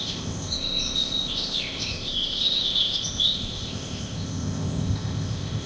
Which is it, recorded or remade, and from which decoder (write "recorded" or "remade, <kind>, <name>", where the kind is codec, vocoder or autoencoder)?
remade, codec, ZipCodec